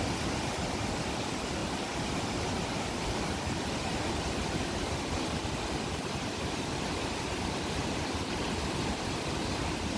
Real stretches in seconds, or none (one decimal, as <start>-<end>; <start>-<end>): 0.0-3.9; 8.4-10.0